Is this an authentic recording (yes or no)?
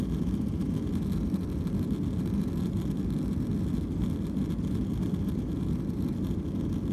yes